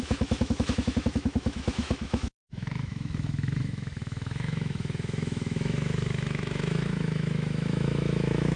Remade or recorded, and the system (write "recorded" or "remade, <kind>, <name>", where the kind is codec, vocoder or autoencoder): remade, autoencoder, DAC-VAE